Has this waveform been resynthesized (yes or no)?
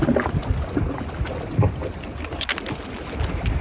no